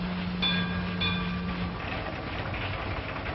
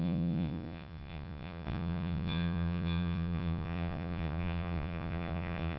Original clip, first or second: first